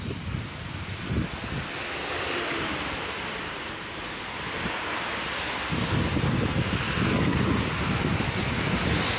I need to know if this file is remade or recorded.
recorded